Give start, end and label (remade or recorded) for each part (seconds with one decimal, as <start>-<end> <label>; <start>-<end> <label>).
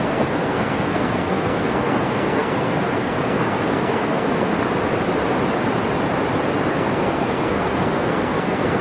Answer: 0.0-4.5 remade; 4.5-6.7 recorded; 6.7-8.8 remade